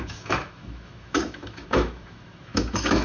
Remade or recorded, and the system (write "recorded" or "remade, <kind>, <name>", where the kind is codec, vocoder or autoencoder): remade, autoencoder, DAC-VAE